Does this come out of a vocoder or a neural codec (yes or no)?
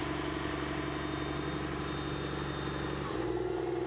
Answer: no